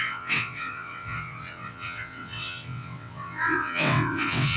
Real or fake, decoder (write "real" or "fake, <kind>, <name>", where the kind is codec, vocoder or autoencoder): fake, vocoder, WaveNeXt